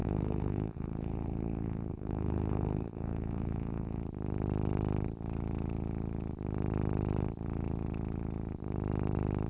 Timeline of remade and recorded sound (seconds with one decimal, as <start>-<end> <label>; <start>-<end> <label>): 0.0-4.0 remade; 4.0-9.5 recorded